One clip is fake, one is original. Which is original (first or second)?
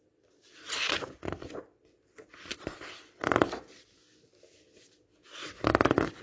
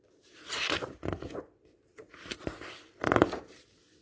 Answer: first